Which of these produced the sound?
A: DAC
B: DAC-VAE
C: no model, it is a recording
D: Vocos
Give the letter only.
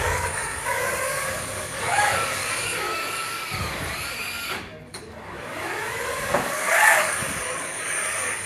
A